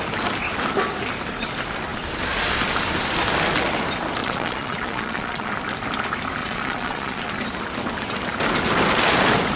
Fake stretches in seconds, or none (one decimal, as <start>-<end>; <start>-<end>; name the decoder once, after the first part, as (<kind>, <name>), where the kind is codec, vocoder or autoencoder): 4.2-5.5 (vocoder, Vocos); 6.4-7.3